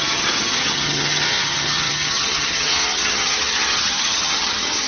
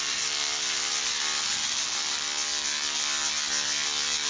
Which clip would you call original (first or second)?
second